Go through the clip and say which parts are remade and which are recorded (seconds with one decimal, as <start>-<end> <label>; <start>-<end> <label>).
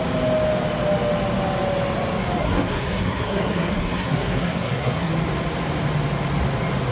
0.0-2.4 recorded; 2.4-5.1 remade; 5.1-6.9 recorded